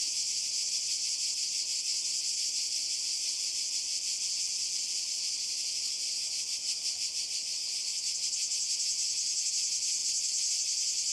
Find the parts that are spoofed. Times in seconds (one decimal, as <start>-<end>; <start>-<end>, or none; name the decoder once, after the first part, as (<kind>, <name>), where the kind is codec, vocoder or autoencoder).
none